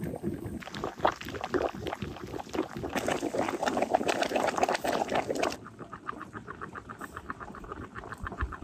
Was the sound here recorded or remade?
recorded